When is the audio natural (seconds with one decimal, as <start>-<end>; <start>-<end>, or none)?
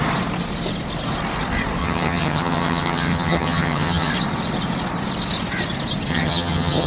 0.0-1.8; 4.1-6.1